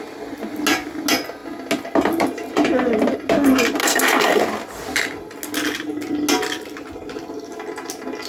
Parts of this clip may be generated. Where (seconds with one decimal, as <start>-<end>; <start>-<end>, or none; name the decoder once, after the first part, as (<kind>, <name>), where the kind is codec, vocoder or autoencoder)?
3.8-4.4 (codec, SNAC)